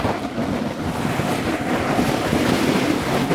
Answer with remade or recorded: recorded